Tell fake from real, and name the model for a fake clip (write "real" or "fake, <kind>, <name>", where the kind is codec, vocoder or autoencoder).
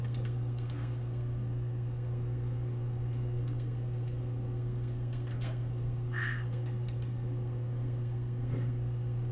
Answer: fake, codec, SNAC